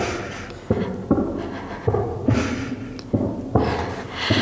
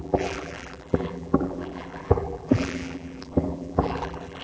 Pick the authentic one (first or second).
first